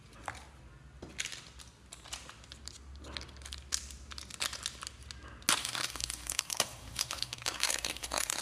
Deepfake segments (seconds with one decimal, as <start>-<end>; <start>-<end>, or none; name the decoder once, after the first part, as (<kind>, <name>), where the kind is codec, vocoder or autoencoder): 5.6-8.4 (codec, SNAC)